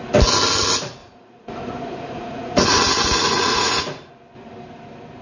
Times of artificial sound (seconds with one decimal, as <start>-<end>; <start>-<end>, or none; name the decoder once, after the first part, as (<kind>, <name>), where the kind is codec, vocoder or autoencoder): 1.0-4.1 (vocoder, Vocos)